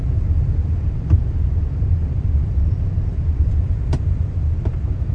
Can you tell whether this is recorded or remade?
remade